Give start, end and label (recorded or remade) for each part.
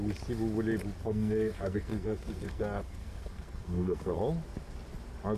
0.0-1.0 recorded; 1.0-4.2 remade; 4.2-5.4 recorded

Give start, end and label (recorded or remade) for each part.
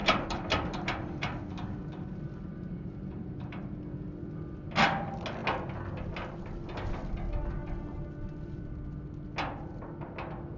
0.0-3.8 remade; 3.8-10.6 recorded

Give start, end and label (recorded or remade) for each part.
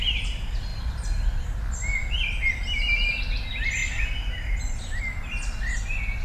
0.0-6.2 recorded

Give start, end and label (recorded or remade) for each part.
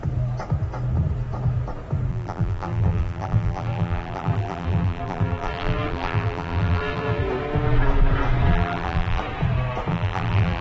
0.0-2.1 recorded; 2.1-7.2 remade; 7.2-8.5 recorded; 8.5-9.2 remade; 9.2-9.9 recorded; 9.9-10.6 remade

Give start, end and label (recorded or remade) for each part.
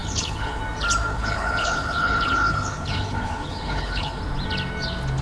0.0-0.6 remade; 0.6-1.1 recorded; 1.1-4.2 remade; 4.2-5.2 recorded